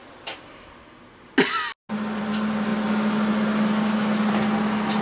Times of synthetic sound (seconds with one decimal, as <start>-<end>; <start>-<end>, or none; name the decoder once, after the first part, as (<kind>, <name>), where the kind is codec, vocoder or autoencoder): none